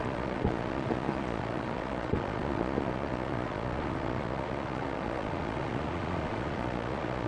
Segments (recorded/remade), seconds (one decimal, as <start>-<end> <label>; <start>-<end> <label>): 0.0-7.3 remade